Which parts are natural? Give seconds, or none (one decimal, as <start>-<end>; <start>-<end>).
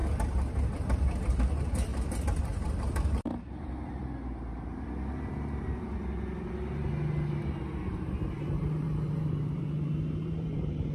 0.0-1.2; 1.9-2.4; 4.0-7.9